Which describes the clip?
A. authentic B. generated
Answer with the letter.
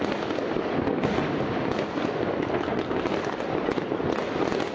A